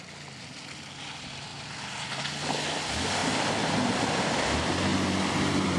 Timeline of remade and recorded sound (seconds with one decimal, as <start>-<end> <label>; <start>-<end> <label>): 0.0-1.5 recorded; 1.5-2.1 remade; 2.1-3.2 recorded; 3.2-4.1 remade; 4.1-4.9 recorded; 4.9-5.8 remade